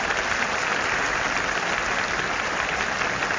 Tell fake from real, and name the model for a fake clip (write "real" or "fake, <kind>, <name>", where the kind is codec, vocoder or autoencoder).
real